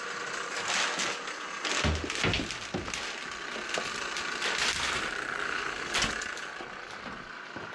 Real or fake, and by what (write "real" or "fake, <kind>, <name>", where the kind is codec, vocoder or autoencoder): real